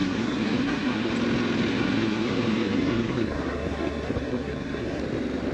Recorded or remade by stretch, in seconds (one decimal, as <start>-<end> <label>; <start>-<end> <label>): 0.0-1.1 remade; 1.1-1.7 recorded; 1.7-5.0 remade; 5.0-5.5 recorded

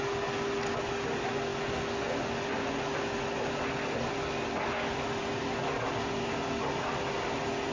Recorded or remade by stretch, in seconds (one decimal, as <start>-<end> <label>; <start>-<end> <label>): 0.0-7.7 recorded

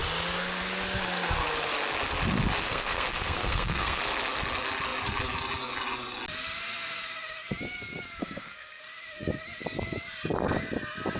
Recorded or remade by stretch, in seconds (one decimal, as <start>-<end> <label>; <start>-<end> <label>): 0.0-2.6 recorded; 2.6-4.0 remade; 4.0-8.2 recorded; 8.2-8.8 remade; 8.8-11.2 recorded

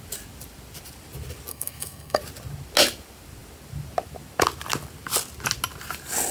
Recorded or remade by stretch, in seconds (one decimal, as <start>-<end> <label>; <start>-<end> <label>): 0.0-1.5 recorded; 1.5-2.2 remade; 2.2-6.3 recorded

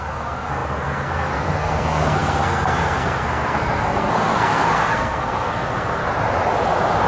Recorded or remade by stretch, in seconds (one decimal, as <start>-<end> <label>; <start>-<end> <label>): 0.0-6.0 remade; 6.0-7.1 recorded

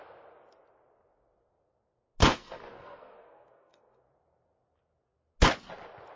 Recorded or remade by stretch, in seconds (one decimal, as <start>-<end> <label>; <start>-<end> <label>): 0.0-2.2 recorded; 2.2-4.0 remade; 4.0-6.2 recorded